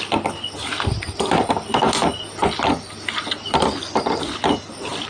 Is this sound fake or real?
real